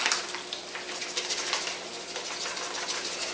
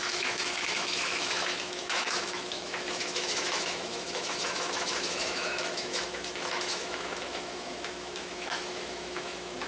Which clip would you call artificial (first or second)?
second